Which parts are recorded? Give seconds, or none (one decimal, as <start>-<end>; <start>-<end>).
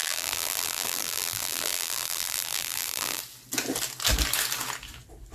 3.2-5.3